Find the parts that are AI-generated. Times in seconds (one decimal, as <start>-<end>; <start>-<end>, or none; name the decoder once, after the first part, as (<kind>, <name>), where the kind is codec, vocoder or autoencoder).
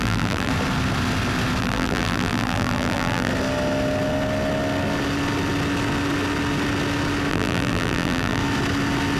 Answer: 0.0-0.5 (vocoder, BigVGAN v2); 1.6-3.3; 7.3-8.4